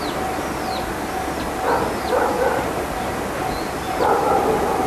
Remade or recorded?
recorded